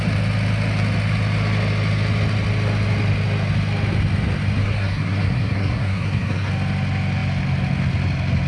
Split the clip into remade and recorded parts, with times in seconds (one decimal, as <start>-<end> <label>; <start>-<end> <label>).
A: 0.0-4.6 recorded; 4.6-6.5 remade; 6.5-8.5 recorded

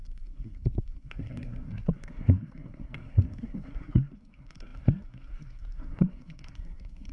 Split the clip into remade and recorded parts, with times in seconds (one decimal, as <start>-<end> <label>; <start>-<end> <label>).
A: 0.0-7.1 remade

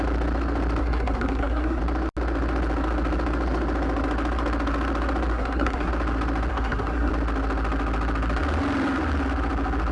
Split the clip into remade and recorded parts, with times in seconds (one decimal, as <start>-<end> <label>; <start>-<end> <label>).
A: 0.0-0.8 recorded; 0.8-1.8 remade; 1.8-5.3 recorded; 5.3-5.9 remade; 5.9-6.5 recorded; 6.5-7.1 remade; 7.1-9.9 recorded

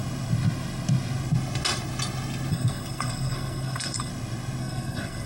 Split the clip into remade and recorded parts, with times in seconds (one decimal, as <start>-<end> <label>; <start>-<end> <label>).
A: 0.0-2.5 recorded; 2.5-4.1 remade; 4.1-4.6 recorded; 4.6-5.3 remade

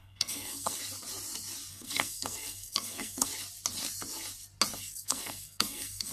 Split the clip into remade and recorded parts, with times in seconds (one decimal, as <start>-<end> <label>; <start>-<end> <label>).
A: 0.0-0.8 remade; 0.8-1.7 recorded; 1.7-3.3 remade; 3.3-4.8 recorded; 4.8-6.1 remade

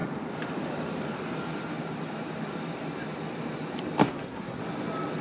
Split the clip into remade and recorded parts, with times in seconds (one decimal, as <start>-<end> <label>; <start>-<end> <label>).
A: 0.0-4.0 recorded; 4.0-4.6 remade; 4.6-5.2 recorded